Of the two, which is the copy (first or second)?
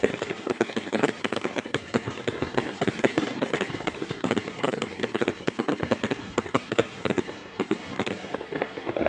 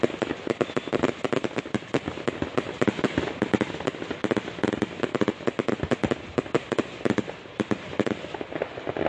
first